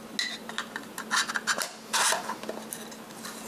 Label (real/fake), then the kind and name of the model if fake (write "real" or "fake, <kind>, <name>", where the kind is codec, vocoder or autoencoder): real